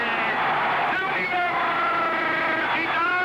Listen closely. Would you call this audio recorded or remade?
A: recorded